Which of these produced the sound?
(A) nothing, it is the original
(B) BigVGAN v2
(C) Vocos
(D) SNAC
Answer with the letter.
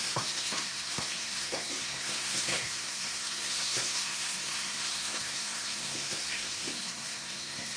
D